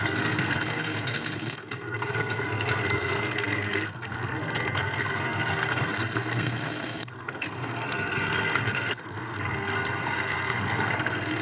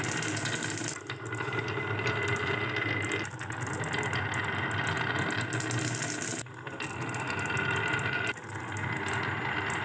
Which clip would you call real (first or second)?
second